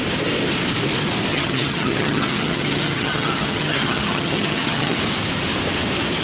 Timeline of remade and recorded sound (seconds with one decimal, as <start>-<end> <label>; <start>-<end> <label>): 0.0-1.3 recorded; 1.3-5.0 remade; 5.0-6.2 recorded